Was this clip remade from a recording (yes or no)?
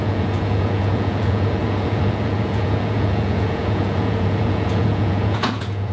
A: yes